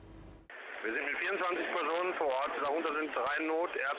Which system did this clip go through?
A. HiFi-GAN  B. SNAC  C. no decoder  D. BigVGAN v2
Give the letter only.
C